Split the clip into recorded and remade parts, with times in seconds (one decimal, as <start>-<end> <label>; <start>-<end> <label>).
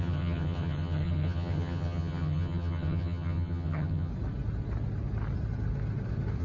0.0-4.1 remade; 4.1-6.4 recorded